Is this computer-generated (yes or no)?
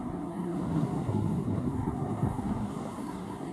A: yes